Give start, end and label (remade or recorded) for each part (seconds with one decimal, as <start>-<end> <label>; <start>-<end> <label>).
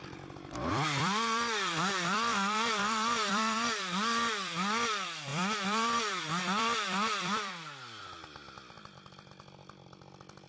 0.0-0.7 recorded; 0.7-10.5 remade